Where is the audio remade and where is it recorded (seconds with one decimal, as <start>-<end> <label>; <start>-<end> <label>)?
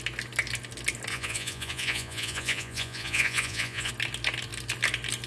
0.0-1.1 recorded; 1.1-3.9 remade; 3.9-5.3 recorded